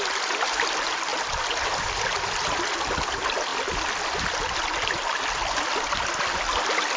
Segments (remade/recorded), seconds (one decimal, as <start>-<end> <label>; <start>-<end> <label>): 0.0-7.0 recorded